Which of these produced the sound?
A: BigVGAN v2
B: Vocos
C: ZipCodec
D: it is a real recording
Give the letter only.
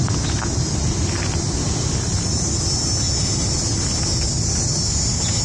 D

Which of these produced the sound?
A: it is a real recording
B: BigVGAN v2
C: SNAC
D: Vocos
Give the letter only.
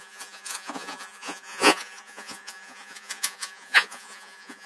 D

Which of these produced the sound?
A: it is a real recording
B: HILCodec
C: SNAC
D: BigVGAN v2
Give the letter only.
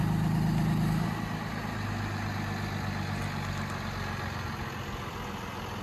A